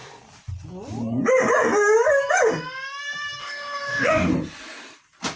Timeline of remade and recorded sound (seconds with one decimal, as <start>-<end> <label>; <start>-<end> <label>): 0.0-3.4 recorded; 3.4-4.3 remade; 4.3-5.4 recorded